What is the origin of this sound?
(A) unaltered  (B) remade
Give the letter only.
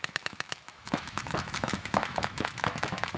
B